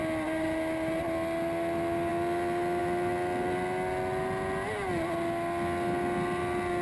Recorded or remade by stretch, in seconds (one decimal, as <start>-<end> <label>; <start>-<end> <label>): 0.0-6.8 recorded